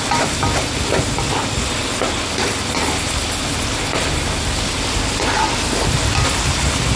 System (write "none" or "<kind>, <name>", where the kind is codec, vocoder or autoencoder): none